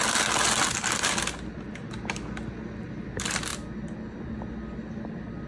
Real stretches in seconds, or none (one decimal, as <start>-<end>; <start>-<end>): 0.0-5.5

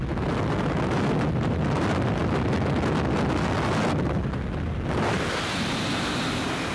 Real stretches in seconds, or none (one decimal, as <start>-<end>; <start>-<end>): 0.0-6.7

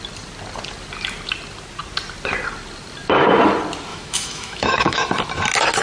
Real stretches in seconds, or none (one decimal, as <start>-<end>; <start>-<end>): 0.0-3.9; 5.1-5.8

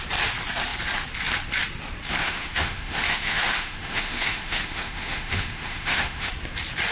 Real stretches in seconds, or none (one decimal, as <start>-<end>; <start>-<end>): 0.0-2.2; 6.3-6.9

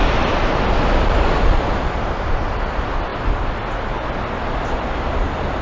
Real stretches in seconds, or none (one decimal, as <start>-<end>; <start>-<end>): 0.0-5.6

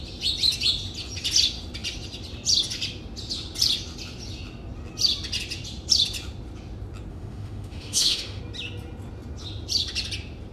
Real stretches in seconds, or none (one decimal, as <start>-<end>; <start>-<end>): 0.0-7.1; 8.4-10.5

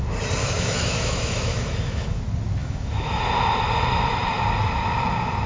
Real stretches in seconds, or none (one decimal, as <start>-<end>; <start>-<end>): 0.0-0.4; 2.2-2.6; 3.2-5.5

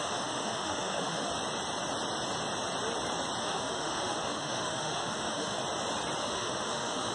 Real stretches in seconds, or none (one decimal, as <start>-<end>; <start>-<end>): 1.3-3.4; 5.6-6.2